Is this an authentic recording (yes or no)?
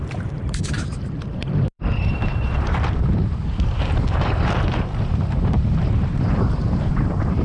no